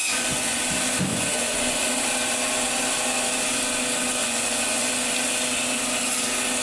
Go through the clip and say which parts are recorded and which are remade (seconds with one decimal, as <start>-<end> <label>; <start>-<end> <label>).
0.0-0.6 remade; 0.6-1.1 recorded; 1.1-1.9 remade; 1.9-4.2 recorded; 4.2-4.9 remade; 4.9-6.6 recorded